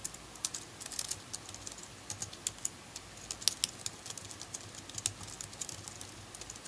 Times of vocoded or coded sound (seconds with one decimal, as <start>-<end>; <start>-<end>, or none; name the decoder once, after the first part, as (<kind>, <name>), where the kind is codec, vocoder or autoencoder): none